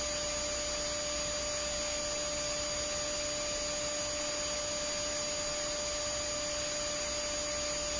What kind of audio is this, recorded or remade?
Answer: recorded